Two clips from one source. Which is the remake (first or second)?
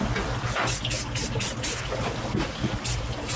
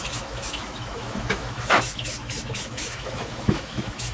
second